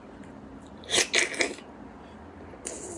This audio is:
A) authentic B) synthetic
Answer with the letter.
A